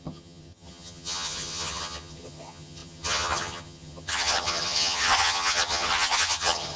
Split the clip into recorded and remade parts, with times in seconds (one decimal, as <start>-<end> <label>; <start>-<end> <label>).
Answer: 0.0-6.8 remade